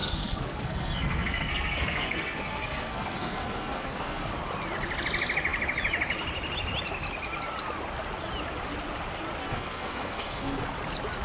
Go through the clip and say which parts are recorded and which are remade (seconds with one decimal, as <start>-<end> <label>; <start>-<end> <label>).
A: 0.0-4.3 remade; 4.3-9.4 recorded; 9.4-10.6 remade; 10.6-11.2 recorded